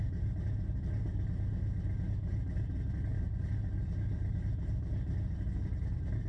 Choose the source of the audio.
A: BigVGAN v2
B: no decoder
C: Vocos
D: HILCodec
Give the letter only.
B